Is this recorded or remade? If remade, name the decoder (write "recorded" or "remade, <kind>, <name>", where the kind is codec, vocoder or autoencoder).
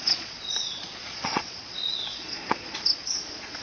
remade, vocoder, Vocos